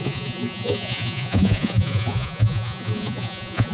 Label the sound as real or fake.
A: fake